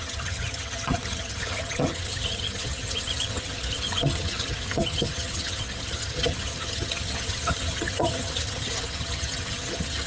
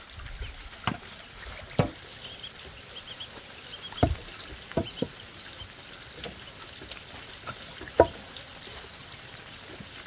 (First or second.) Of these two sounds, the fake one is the first